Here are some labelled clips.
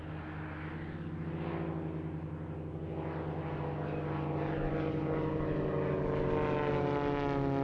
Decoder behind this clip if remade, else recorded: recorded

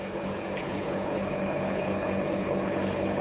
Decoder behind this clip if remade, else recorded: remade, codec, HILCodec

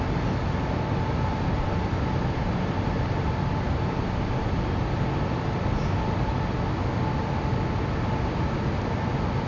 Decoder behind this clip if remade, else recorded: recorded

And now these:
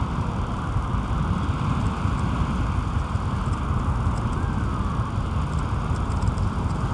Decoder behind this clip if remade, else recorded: recorded